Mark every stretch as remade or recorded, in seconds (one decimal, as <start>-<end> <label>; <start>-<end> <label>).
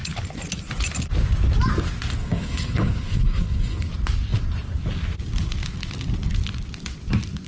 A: 0.0-2.2 recorded; 2.2-3.9 remade; 3.9-7.5 recorded